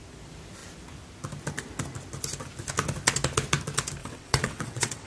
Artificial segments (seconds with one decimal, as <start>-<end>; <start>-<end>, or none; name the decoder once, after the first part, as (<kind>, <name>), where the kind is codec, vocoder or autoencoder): 4.0-5.1 (vocoder, WaveNeXt)